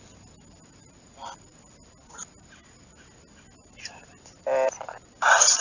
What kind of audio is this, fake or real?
real